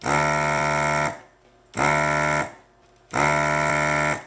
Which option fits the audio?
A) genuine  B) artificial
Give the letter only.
B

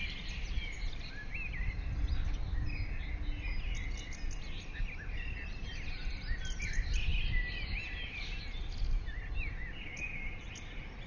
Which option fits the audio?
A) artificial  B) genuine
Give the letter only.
B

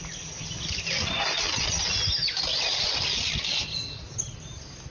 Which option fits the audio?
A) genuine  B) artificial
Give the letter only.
A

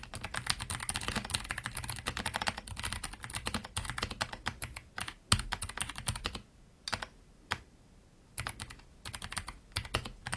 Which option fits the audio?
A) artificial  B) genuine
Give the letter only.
B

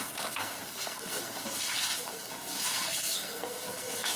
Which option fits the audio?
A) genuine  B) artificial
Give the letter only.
B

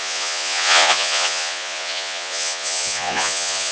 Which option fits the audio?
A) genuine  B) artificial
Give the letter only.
B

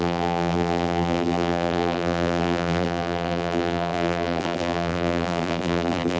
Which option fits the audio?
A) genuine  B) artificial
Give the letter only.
B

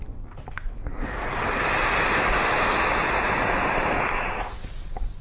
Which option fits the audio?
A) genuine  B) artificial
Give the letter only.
A